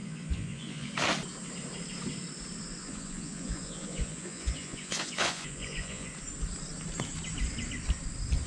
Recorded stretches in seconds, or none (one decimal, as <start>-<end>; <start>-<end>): 0.9-2.8; 6.1-8.5